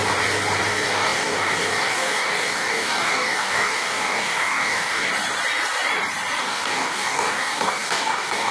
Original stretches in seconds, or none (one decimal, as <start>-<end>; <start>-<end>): 0.0-0.7; 5.1-6.4